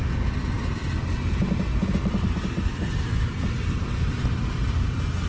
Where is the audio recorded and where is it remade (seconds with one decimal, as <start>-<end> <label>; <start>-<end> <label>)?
0.0-5.3 recorded